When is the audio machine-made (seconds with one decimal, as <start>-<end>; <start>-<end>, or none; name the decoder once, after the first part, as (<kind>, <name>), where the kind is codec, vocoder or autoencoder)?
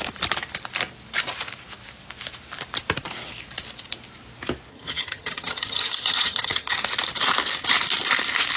4.7-6.8 (vocoder, HiFi-GAN)